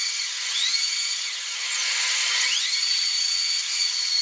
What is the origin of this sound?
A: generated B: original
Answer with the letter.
A